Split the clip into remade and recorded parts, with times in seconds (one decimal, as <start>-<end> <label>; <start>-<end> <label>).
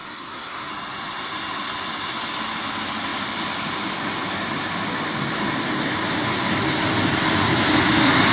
0.0-0.7 remade; 0.7-8.3 recorded